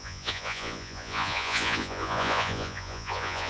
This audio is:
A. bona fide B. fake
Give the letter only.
B